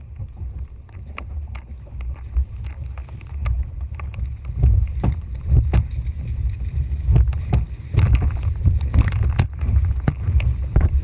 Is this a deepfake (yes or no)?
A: no